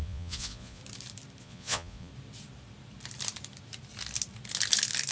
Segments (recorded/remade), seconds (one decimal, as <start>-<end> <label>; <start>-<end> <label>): 0.0-0.8 remade; 0.8-1.4 recorded; 1.4-2.1 remade; 2.1-5.1 recorded